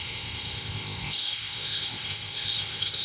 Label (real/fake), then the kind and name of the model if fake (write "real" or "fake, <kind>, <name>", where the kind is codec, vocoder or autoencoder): fake, codec, ZipCodec